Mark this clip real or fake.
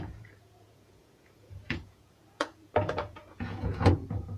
fake